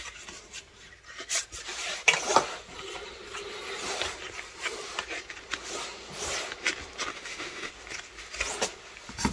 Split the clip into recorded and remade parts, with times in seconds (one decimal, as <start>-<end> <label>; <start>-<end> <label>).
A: 0.0-7.1 recorded; 7.1-7.7 remade; 7.7-9.3 recorded